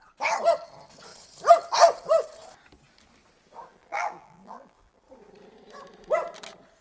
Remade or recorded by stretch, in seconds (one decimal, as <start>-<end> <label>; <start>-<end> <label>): 0.0-3.7 recorded; 3.7-5.0 remade; 5.0-6.8 recorded